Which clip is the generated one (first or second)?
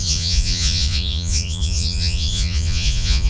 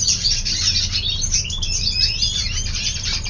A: first